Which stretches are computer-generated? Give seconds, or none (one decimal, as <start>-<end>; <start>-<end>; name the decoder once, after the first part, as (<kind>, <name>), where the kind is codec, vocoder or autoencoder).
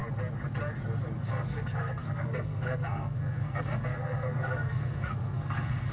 1.3-5.9 (codec, SNAC)